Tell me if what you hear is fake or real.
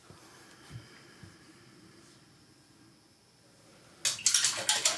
real